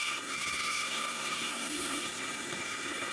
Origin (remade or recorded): remade